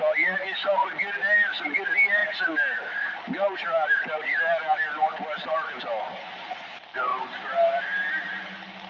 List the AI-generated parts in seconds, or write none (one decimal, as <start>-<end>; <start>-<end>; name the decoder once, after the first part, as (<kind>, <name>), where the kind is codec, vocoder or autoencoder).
7.1-7.8 (vocoder, BigVGAN v2)